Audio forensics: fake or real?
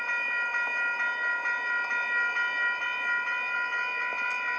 real